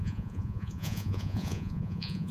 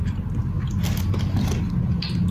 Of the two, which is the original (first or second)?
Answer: second